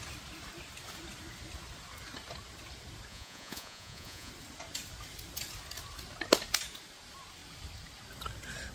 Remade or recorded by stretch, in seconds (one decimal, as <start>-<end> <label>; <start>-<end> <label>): 0.0-3.1 recorded; 3.1-4.3 remade; 4.3-8.7 recorded